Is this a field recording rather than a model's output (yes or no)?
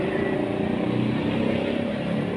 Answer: yes